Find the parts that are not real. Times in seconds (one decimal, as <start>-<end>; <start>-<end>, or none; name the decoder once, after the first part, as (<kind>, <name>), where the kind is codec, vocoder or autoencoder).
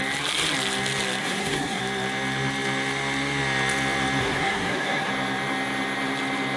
1.2-1.8 (codec, SNAC); 4.2-5.1